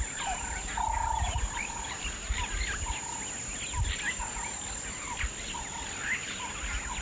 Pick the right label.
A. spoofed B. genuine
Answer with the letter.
B